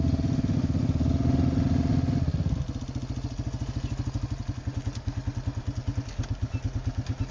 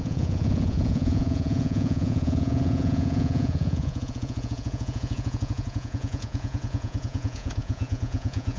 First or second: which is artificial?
second